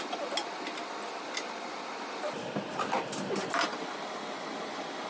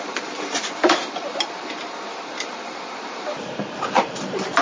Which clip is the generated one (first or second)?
second